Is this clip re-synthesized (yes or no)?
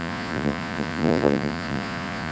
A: yes